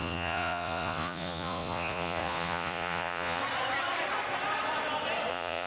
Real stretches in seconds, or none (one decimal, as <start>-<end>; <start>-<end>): 3.4-5.3